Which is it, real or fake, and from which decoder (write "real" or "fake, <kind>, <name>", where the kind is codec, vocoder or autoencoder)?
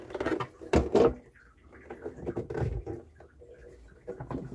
real